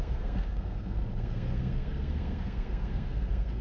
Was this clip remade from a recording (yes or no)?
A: yes